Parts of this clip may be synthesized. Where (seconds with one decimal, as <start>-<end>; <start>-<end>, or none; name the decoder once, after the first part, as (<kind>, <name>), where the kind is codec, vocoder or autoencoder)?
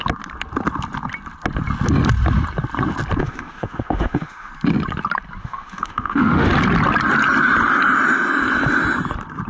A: 3.2-4.5 (autoencoder, DAC-VAE); 5.4-6.5